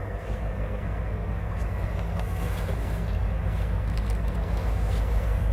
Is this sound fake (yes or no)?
yes